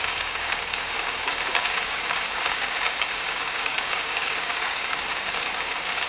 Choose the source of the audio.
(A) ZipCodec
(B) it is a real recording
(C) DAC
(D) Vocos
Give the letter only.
C